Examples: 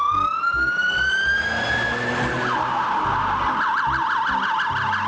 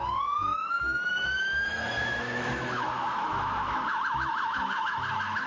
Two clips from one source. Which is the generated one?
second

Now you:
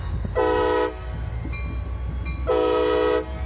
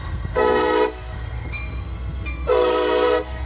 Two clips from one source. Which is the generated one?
second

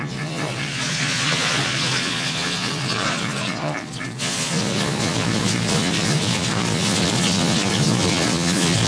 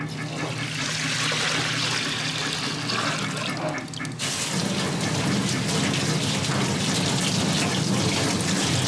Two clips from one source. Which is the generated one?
first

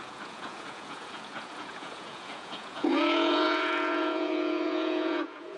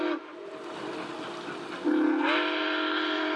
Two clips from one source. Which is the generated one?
first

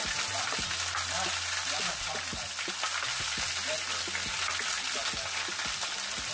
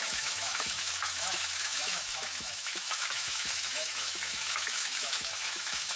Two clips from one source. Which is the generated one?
second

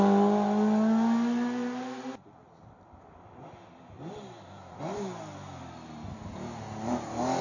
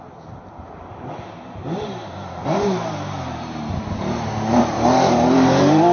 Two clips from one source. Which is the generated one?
second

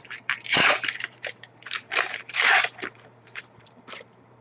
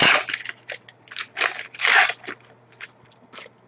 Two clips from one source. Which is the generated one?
first